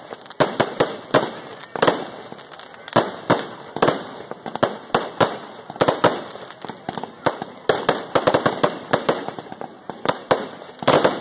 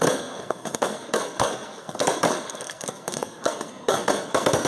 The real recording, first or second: first